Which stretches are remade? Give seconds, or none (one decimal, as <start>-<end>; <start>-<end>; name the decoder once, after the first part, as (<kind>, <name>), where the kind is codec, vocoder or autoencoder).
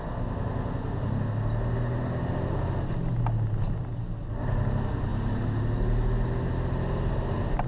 none